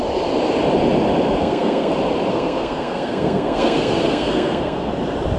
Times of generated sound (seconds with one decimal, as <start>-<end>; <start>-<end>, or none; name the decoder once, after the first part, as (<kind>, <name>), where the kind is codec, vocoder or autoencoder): 1.4-1.9 (codec, SNAC); 2.3-4.9